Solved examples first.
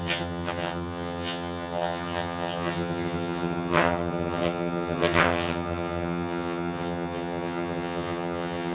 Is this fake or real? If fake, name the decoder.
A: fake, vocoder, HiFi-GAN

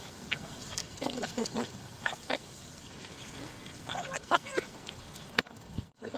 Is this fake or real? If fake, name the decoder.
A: fake, codec, SNAC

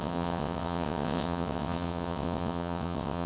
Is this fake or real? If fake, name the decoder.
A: fake, vocoder, WaveNeXt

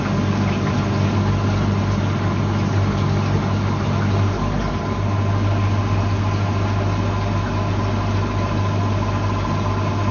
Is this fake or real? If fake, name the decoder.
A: real